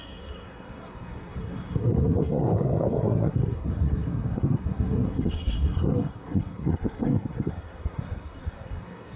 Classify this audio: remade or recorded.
remade